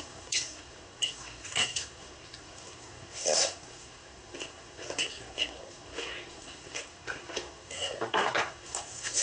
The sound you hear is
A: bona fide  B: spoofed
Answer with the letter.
B